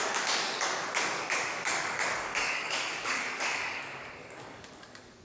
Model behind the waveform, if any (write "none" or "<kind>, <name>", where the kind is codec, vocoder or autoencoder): codec, DAC